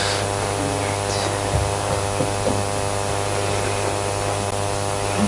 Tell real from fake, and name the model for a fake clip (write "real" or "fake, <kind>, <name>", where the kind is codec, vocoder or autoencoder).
real